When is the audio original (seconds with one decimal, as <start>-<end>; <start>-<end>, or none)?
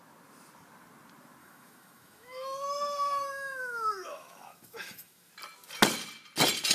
0.0-1.4; 5.3-6.7